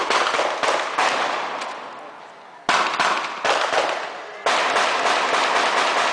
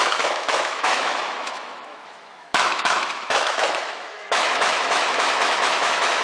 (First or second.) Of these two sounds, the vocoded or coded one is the second